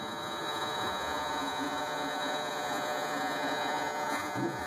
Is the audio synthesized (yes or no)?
yes